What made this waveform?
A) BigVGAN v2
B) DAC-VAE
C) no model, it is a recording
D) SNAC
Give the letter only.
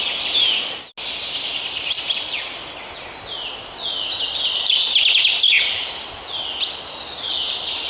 C